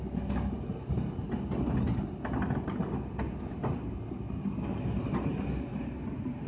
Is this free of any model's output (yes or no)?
yes